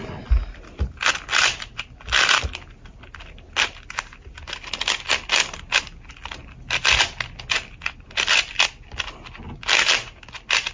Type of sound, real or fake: real